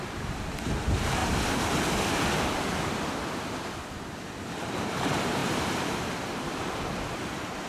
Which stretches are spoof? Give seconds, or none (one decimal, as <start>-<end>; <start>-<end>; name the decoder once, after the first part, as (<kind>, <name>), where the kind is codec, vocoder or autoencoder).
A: 0.0-1.2 (vocoder, BigVGAN v2); 4.4-7.7